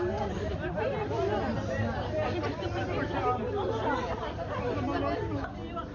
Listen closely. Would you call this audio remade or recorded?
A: recorded